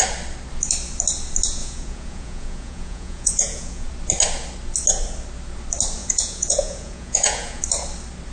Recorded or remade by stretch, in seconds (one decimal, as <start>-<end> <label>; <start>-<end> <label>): 0.0-1.6 recorded; 1.6-3.9 remade; 3.9-6.0 recorded; 6.0-7.6 remade; 7.6-8.3 recorded